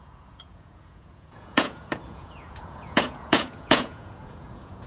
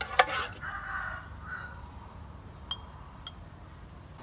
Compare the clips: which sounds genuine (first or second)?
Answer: second